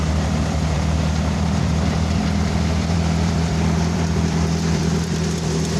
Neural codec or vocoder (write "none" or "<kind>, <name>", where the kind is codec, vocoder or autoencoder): vocoder, BigVGAN v2